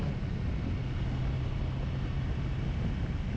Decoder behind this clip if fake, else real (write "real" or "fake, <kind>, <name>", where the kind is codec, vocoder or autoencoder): real